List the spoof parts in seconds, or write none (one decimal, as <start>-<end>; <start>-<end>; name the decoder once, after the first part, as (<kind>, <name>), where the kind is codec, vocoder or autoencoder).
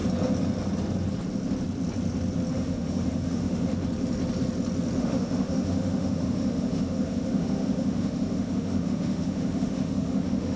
2.5-3.7 (autoencoder, DAC-VAE); 5.0-10.6